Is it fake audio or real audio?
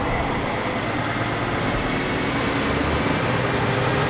real